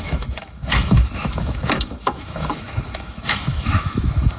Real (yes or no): no